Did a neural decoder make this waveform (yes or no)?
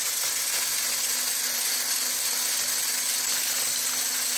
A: no